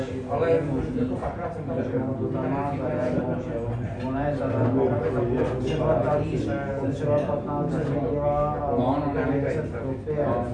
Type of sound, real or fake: real